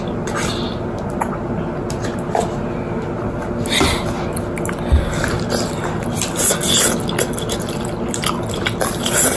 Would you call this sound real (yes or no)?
yes